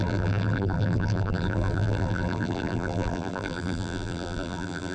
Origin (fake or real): fake